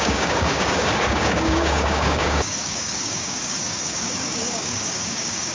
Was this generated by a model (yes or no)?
yes